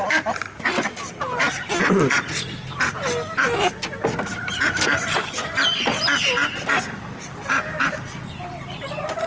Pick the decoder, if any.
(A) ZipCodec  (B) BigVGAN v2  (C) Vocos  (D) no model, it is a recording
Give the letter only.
D